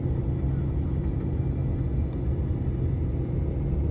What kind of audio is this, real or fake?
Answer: real